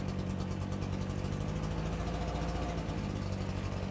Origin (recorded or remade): recorded